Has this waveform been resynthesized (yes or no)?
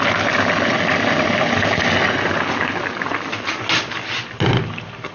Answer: no